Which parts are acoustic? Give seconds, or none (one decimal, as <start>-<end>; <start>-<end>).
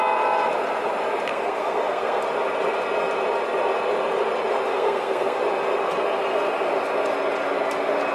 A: 0.0-1.3; 2.2-4.7; 5.4-8.1